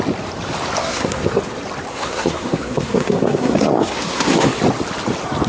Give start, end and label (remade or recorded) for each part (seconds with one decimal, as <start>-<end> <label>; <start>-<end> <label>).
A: 0.0-0.8 recorded; 0.8-1.4 remade; 1.4-1.9 recorded; 1.9-4.6 remade; 4.6-5.5 recorded